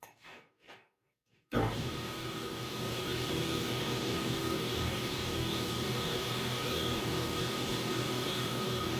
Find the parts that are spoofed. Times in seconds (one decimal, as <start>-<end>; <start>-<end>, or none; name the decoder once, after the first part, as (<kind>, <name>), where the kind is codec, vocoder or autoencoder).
0.0-9.0 (codec, DAC)